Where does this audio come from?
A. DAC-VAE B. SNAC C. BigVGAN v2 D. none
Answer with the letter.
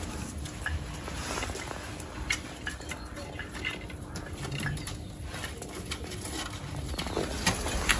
D